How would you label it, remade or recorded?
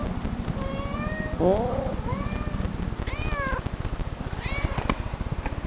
recorded